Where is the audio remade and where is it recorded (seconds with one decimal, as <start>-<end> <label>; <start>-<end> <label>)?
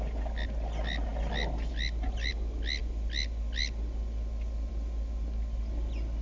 0.0-6.2 recorded